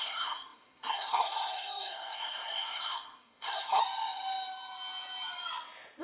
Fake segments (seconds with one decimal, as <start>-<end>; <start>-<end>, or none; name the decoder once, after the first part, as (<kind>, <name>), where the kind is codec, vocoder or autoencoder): 0.0-3.8 (codec, SNAC)